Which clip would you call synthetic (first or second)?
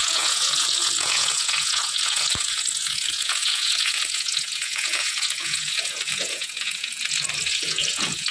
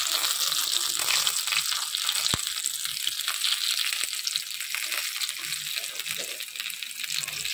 first